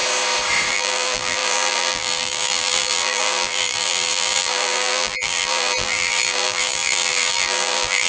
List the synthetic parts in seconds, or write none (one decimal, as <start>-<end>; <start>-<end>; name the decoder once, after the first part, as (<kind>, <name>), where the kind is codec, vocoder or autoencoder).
0.7-8.1 (vocoder, BigVGAN v2)